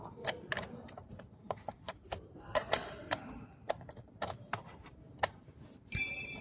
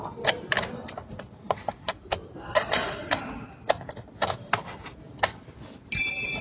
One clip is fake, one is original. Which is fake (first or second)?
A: first